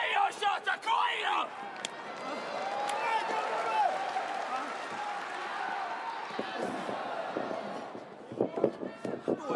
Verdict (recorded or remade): recorded